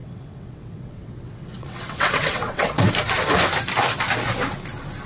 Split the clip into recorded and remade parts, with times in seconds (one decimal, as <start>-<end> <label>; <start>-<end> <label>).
0.0-2.9 remade; 2.9-5.1 recorded